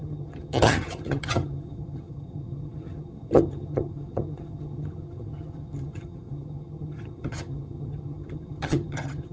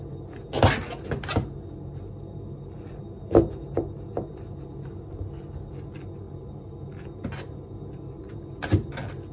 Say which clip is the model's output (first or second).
first